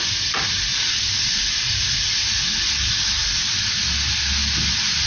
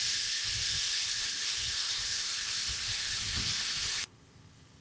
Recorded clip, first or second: first